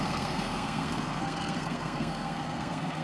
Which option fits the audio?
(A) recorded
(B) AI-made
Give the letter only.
B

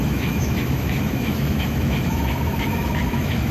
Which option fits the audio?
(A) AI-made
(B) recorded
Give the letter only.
A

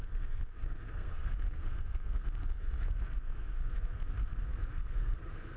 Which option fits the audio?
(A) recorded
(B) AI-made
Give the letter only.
B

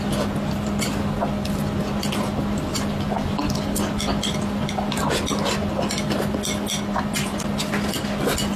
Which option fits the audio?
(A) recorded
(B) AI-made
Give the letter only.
A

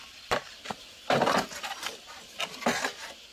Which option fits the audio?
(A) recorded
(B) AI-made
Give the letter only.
A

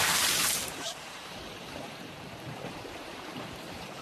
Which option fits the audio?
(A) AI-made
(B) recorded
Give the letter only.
A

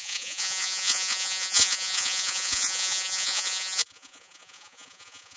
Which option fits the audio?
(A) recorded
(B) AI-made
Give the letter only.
B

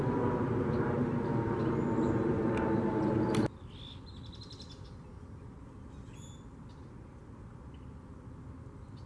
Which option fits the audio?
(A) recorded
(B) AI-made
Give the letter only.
A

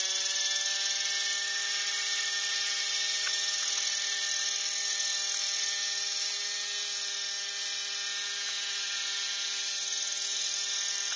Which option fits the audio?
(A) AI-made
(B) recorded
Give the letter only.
B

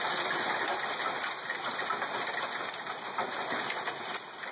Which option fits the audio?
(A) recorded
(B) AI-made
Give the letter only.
A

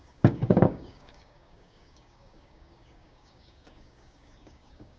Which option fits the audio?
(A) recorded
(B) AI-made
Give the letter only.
B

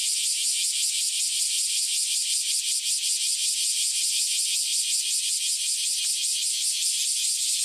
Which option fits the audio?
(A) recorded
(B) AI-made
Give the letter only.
A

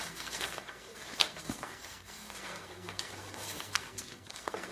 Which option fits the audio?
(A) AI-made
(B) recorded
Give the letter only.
A